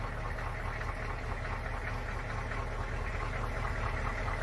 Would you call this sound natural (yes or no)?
yes